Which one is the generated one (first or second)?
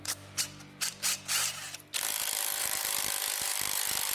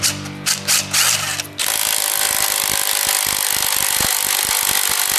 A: first